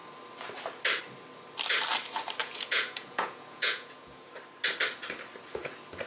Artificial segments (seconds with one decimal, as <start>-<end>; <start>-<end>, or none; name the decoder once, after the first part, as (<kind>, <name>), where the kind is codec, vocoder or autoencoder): 2.4-4.3 (vocoder, Vocos)